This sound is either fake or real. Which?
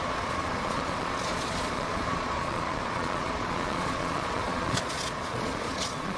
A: fake